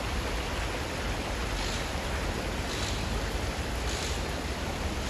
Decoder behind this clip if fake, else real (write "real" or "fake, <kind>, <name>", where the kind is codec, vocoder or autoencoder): real